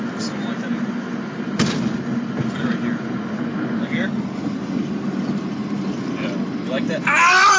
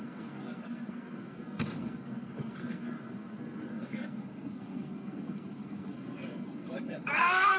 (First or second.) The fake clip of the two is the second